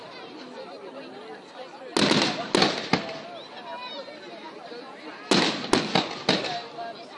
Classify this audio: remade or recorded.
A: recorded